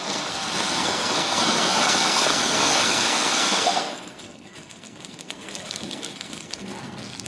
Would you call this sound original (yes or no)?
no